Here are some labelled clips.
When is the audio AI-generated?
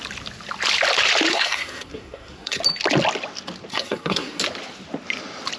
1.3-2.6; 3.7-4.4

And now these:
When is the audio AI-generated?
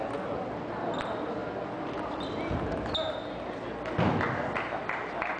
none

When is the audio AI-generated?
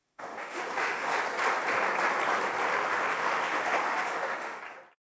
0.0-1.2; 2.7-4.6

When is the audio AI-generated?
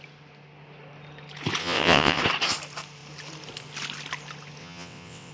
1.6-2.2; 4.6-5.3